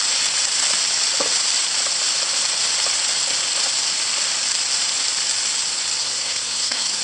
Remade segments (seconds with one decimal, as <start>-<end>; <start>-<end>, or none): 6.0-7.0